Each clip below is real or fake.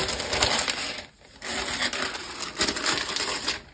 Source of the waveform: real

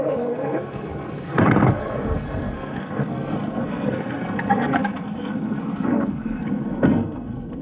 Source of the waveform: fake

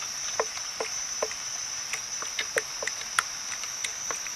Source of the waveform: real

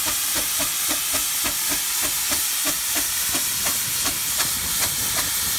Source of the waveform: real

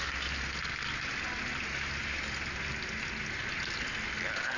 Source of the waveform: real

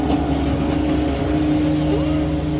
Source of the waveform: real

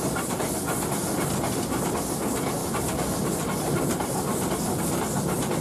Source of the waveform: real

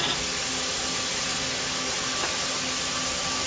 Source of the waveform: real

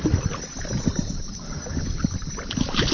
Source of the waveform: real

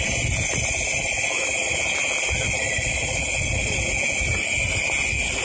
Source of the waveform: real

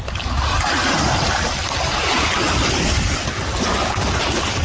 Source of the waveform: real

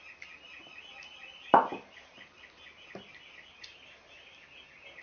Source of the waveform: real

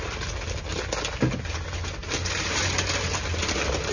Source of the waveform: real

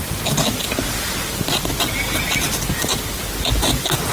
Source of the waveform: real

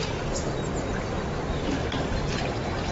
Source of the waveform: real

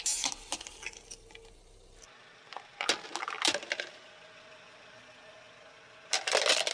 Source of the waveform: real